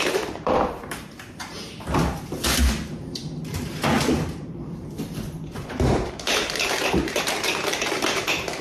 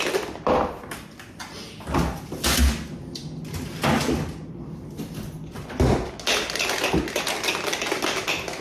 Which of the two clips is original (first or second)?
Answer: second